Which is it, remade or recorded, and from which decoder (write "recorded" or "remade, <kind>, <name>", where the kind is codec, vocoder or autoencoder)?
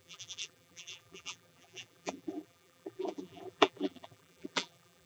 remade, vocoder, BigVGAN v2